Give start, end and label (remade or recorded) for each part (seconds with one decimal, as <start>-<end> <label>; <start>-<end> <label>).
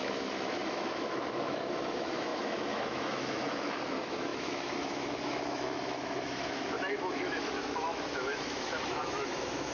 0.0-9.7 remade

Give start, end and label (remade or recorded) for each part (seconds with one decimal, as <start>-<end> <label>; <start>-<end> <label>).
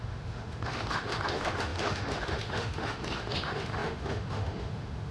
0.0-5.1 remade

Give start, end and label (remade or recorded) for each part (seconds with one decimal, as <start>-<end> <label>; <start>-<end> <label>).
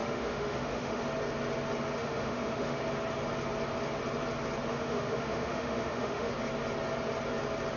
0.0-1.0 remade; 1.0-2.0 recorded; 2.0-2.8 remade; 2.8-4.7 recorded; 4.7-6.3 remade; 6.3-7.8 recorded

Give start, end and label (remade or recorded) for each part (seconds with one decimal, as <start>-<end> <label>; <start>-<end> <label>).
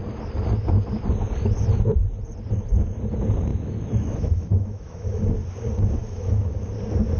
0.0-3.5 recorded; 3.5-5.2 remade; 5.2-6.0 recorded; 6.0-6.6 remade; 6.6-7.2 recorded